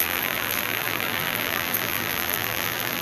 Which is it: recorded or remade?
remade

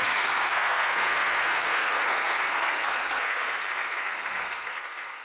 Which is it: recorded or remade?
remade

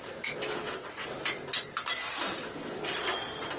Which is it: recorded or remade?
recorded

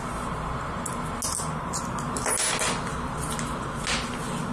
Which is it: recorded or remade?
recorded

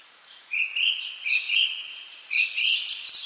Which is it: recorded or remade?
remade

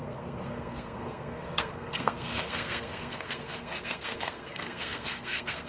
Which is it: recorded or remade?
remade